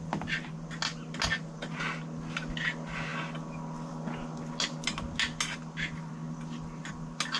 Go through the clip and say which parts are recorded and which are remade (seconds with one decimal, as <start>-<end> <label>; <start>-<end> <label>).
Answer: 0.0-7.4 recorded